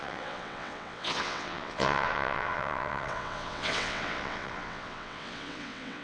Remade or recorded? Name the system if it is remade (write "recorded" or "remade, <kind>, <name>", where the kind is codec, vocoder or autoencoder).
remade, vocoder, WaveNeXt